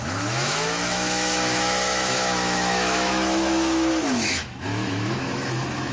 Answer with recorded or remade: remade